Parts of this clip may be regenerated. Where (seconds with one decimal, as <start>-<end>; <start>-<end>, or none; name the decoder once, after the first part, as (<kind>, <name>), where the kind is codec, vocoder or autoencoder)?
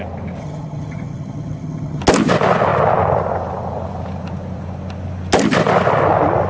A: 0.4-2.0 (vocoder, HiFi-GAN)